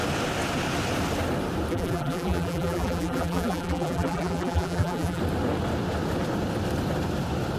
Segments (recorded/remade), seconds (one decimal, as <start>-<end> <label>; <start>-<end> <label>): 0.0-1.7 recorded; 1.7-5.2 remade; 5.2-7.6 recorded